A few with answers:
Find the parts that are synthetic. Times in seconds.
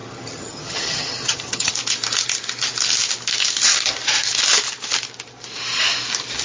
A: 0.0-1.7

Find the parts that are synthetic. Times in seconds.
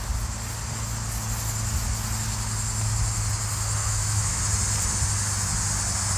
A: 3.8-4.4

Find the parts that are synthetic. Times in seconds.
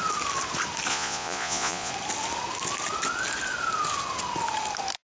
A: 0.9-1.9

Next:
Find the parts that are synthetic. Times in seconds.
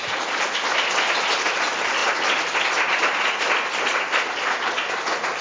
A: none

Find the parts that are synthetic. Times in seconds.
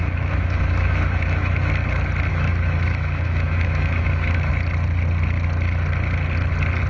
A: 0.0-1.7; 2.3-4.5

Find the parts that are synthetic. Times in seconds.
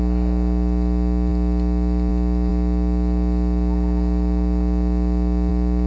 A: none